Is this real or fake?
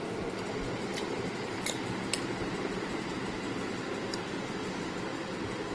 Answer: real